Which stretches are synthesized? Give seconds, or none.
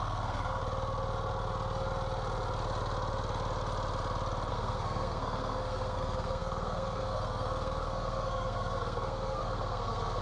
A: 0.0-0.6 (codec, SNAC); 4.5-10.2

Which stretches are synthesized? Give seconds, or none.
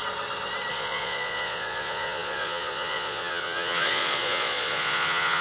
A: 0.7-5.4 (vocoder, Vocos)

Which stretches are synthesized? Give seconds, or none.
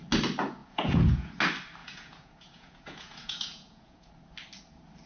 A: 0.6-1.3 (vocoder, Vocos); 1.8-4.1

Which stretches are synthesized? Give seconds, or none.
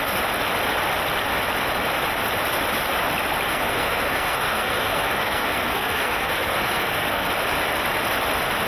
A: 3.5-7.3 (codec, SNAC)